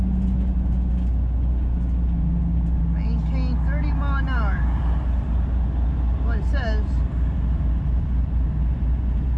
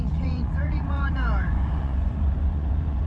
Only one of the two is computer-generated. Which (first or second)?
second